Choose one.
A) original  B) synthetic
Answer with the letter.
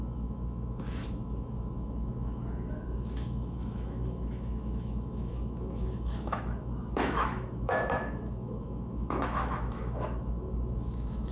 B